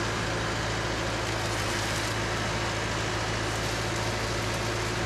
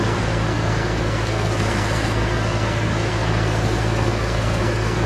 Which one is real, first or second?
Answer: first